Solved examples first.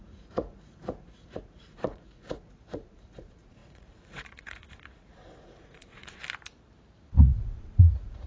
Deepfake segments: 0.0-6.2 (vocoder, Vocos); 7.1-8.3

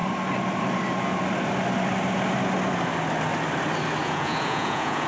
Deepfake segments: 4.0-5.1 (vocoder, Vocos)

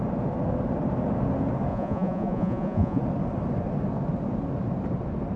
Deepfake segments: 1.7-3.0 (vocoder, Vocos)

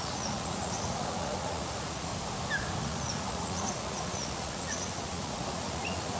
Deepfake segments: 0.0-2.1 (vocoder, Vocos); 2.8-6.2

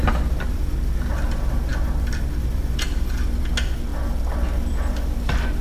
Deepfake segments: none

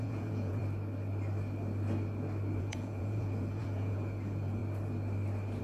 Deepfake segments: 0.0-0.6 (vocoder, Vocos); 2.6-4.6

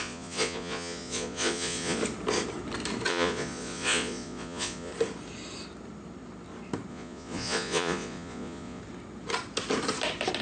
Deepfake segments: 0.0-2.0 (vocoder, Vocos); 3.1-4.9; 6.9-8.8

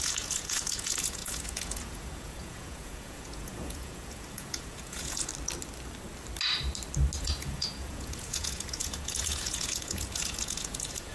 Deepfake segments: 0.0-5.3 (vocoder, Vocos); 7.2-11.1